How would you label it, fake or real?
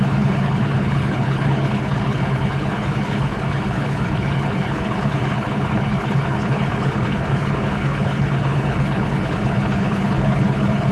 fake